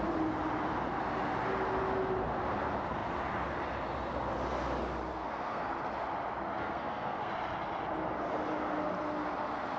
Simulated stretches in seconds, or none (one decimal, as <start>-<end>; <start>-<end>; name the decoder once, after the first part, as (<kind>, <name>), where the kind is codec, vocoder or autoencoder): 5.1-5.7 (codec, SNAC); 6.6-7.3